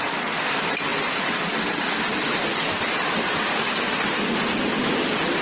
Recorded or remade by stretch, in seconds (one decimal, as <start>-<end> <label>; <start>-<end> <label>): 0.0-5.4 recorded

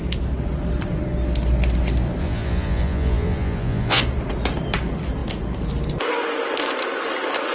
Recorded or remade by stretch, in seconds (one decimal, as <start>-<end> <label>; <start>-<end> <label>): 0.0-2.2 recorded; 2.2-4.0 remade; 4.0-7.5 recorded

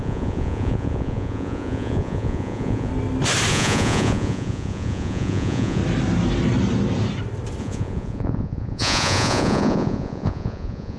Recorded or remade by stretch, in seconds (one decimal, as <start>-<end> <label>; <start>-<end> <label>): 0.0-2.9 remade; 2.9-3.5 recorded; 3.5-5.8 remade; 5.8-7.6 recorded; 7.6-11.0 remade